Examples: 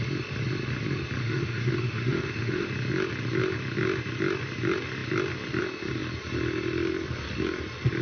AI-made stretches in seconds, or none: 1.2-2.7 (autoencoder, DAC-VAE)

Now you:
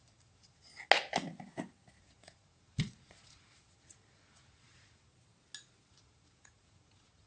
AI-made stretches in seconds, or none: 0.0-0.7 (vocoder, Vocos); 2.0-5.1; 5.9-7.3

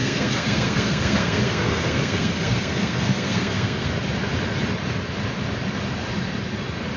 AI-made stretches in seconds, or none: 0.0-3.9 (codec, SNAC)

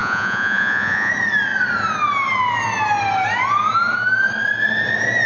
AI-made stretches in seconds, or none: 0.0-1.1 (vocoder, Vocos)